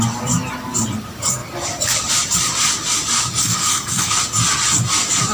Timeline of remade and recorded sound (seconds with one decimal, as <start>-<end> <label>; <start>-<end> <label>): 0.0-3.4 recorded; 3.4-4.1 remade; 4.1-5.3 recorded